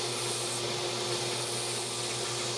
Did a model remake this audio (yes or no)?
no